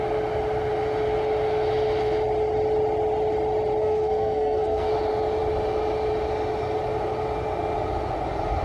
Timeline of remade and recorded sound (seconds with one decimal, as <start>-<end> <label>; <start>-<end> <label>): 0.0-3.8 recorded; 3.8-4.9 remade; 4.9-8.6 recorded